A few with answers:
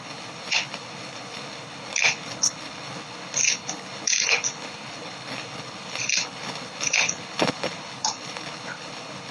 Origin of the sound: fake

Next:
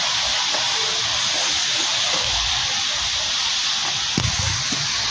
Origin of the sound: real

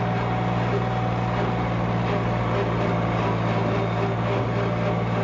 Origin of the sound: real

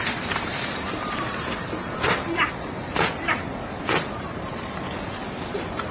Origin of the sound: fake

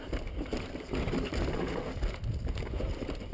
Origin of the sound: real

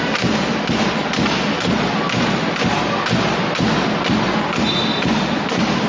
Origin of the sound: real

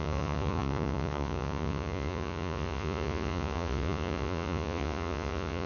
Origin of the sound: fake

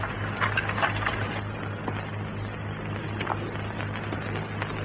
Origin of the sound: real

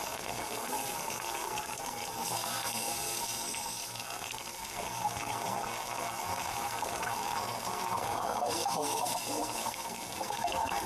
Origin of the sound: fake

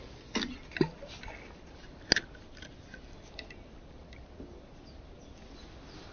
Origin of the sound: real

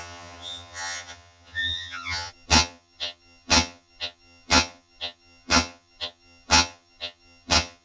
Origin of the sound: fake